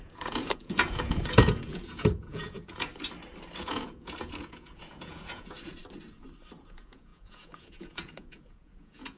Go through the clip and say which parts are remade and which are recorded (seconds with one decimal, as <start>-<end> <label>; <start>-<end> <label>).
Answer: 0.0-2.9 remade; 2.9-3.6 recorded; 3.6-5.8 remade; 5.8-6.6 recorded; 6.6-9.2 remade